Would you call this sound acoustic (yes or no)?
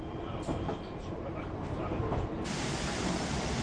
no